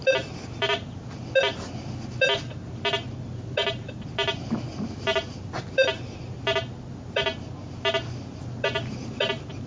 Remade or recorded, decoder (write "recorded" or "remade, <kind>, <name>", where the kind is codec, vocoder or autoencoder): recorded